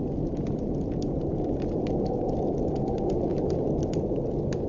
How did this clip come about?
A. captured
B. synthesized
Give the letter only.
A